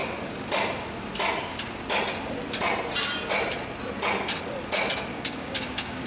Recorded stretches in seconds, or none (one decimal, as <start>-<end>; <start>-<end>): 0.0-5.1